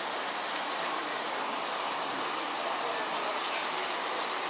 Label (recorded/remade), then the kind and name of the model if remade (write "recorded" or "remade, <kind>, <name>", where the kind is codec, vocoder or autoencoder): recorded